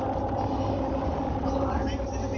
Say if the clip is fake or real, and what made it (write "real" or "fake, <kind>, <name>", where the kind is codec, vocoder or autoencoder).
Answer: real